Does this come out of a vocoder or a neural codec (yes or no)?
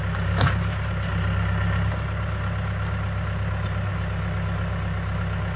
no